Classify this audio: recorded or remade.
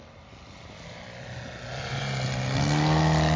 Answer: recorded